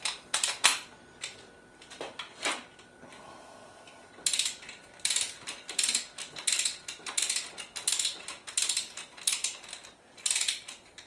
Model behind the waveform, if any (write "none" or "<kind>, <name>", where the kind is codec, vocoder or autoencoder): none